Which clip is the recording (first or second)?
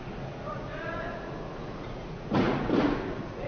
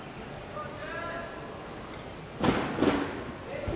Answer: second